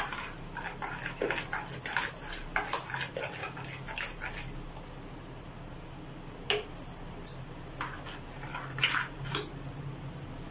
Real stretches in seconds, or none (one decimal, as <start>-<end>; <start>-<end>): 0.0-10.5